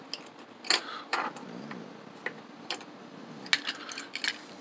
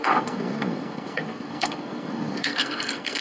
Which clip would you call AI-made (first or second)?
second